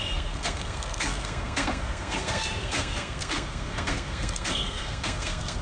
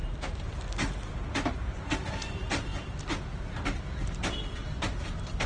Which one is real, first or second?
second